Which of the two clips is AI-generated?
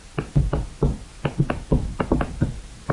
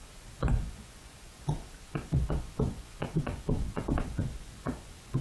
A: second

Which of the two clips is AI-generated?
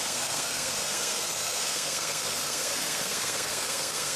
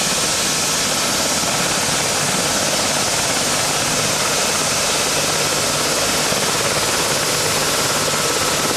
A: first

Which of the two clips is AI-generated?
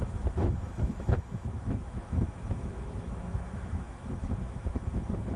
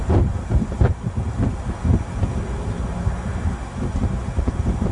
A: first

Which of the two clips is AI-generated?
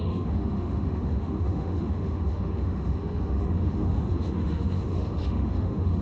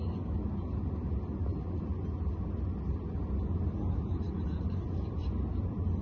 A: first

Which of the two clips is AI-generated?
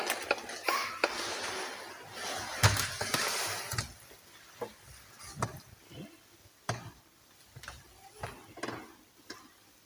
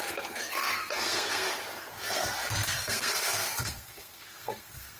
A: second